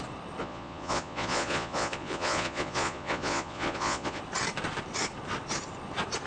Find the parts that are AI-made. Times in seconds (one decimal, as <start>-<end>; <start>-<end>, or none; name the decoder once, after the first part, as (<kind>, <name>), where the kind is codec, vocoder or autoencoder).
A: 0.4-4.2 (vocoder, Vocos)